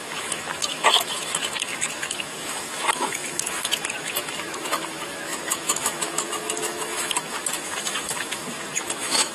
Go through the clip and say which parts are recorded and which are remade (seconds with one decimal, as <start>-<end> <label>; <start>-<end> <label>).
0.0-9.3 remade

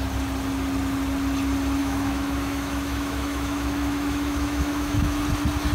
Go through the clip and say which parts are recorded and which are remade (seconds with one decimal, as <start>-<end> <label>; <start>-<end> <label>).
0.0-1.8 recorded; 1.8-5.2 remade; 5.2-5.7 recorded

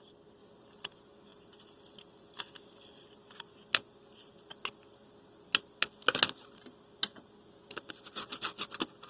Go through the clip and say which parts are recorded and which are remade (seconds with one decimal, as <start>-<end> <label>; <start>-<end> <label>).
0.0-9.1 recorded

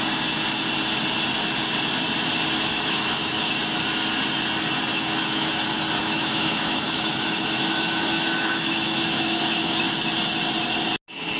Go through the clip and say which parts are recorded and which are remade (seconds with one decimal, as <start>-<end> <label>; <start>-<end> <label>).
0.0-2.7 recorded; 2.7-3.5 remade; 3.5-4.9 recorded; 4.9-5.5 remade; 5.5-6.0 recorded; 6.0-9.8 remade; 9.8-11.4 recorded